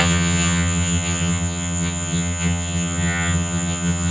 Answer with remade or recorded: remade